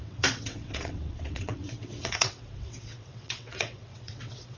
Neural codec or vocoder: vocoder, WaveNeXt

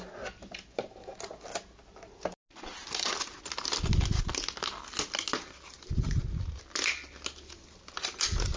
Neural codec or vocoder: none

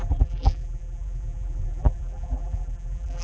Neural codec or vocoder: vocoder, BigVGAN v2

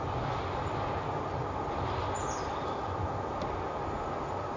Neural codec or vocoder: none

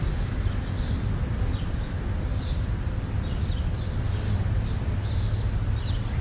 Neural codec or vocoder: none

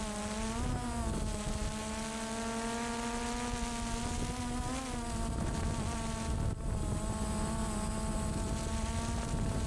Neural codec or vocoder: none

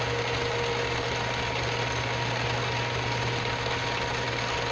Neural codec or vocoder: none